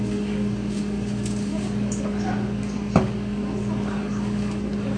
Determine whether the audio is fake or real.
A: fake